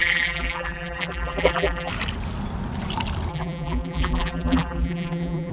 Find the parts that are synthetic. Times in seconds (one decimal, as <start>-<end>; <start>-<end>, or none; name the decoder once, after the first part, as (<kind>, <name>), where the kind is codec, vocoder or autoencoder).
0.0-1.9 (vocoder, BigVGAN v2); 3.3-5.5